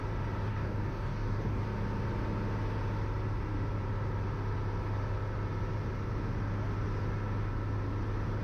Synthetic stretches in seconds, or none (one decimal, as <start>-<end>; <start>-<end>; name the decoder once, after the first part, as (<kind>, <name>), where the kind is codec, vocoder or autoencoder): 0.5-1.6 (codec, DAC)